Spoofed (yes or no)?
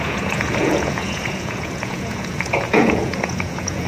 yes